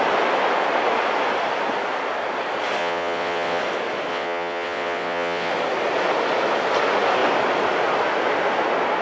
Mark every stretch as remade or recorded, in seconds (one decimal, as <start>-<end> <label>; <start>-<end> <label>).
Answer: 0.0-2.8 recorded; 2.8-3.6 remade; 3.6-4.1 recorded; 4.1-5.5 remade; 5.5-9.0 recorded